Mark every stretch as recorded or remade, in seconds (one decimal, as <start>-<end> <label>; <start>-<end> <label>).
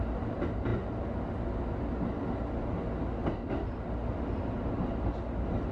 0.0-5.7 recorded